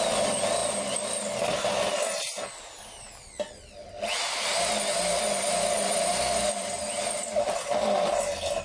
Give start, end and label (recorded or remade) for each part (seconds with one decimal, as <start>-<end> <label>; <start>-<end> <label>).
0.0-8.6 recorded

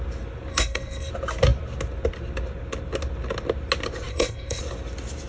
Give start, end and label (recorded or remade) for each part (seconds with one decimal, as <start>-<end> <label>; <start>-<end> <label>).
0.0-0.5 recorded; 0.5-1.1 remade; 1.1-4.1 recorded; 4.1-4.6 remade; 4.6-5.3 recorded